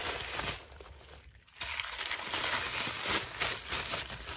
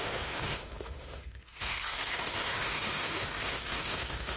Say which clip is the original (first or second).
first